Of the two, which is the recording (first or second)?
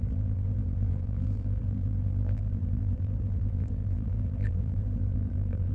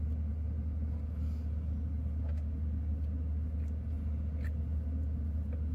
second